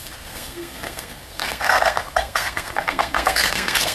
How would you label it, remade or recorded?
remade